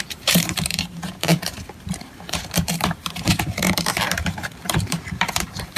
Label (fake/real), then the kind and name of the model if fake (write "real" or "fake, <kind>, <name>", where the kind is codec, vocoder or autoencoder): fake, vocoder, BigVGAN v2